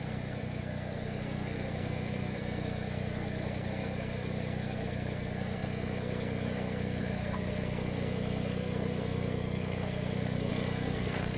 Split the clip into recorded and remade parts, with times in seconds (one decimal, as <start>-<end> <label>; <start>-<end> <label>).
0.0-11.4 remade